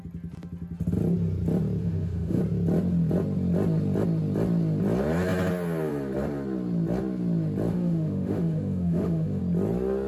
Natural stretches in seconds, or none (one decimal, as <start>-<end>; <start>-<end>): 0.0-1.8; 2.4-7.7; 9.4-10.1